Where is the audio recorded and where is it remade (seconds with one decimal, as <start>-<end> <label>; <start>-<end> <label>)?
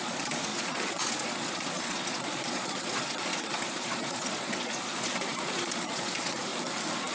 0.0-6.5 remade; 6.5-7.1 recorded